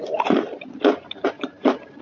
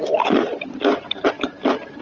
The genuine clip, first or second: second